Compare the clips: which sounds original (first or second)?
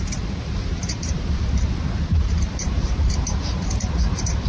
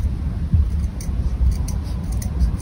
second